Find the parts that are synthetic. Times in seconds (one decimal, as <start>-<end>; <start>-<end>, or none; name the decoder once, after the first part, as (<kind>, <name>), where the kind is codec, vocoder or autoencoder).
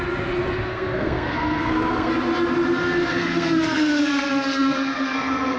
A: 0.7-2.1 (codec, SNAC); 3.1-5.6